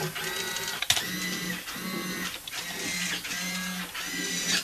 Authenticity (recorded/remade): recorded